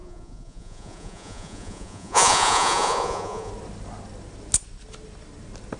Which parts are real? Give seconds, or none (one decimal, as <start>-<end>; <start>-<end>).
3.5-5.8